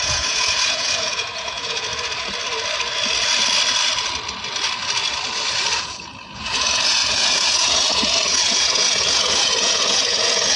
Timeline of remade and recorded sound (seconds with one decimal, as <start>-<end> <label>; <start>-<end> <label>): 0.0-1.9 remade; 1.9-5.8 recorded; 5.8-10.6 remade